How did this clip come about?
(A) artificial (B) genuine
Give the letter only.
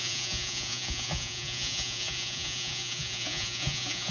A